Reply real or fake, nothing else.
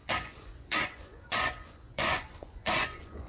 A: fake